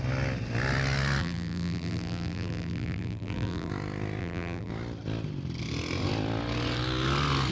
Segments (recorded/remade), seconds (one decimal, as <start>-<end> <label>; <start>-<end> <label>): 0.0-1.2 recorded; 1.2-3.7 remade; 3.7-4.2 recorded; 4.2-4.7 remade; 4.7-7.5 recorded